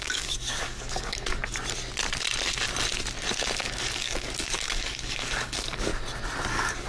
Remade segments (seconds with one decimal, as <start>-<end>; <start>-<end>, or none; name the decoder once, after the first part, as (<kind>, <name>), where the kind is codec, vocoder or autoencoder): 0.0-1.4 (codec, DAC); 3.6-5.9; 6.5-6.9